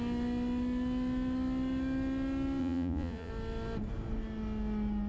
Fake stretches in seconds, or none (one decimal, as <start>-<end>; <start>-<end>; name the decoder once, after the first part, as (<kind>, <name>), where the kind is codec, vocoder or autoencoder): 2.6-3.3 (vocoder, Vocos)